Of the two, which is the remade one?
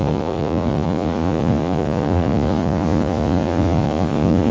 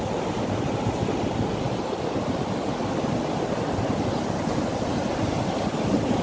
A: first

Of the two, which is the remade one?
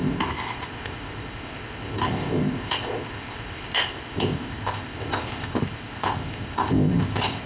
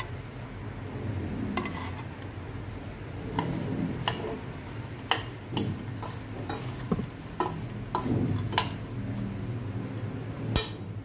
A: first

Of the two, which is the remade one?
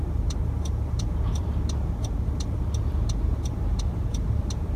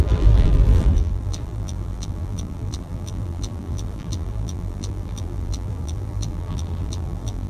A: second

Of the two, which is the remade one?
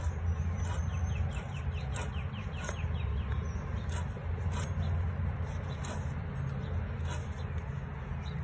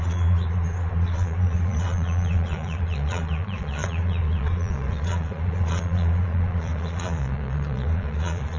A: second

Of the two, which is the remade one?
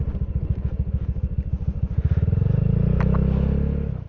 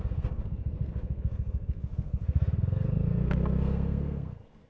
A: second